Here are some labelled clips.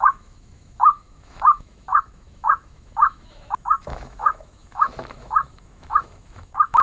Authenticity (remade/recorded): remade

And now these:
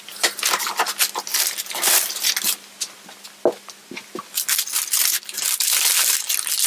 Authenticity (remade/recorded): recorded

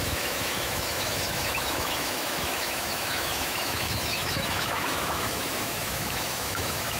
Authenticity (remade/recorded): remade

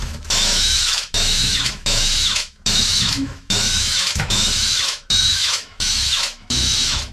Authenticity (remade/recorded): remade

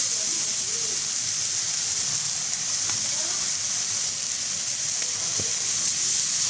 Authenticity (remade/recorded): recorded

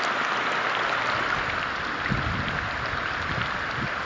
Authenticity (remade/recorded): recorded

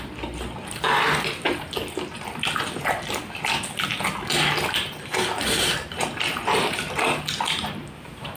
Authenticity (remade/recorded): recorded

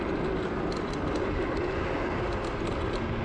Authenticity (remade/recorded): recorded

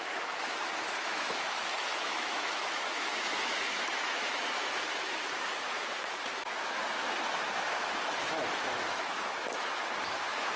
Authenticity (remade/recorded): remade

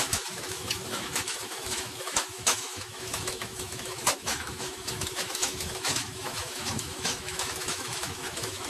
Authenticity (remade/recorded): remade